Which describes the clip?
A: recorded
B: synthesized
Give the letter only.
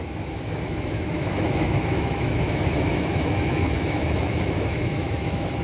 B